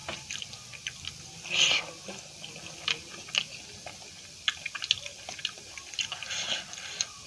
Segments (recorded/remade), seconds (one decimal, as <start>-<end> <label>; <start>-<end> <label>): 0.0-3.4 remade; 3.4-6.3 recorded; 6.3-7.3 remade